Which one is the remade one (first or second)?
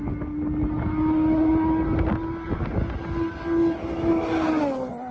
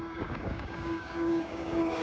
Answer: second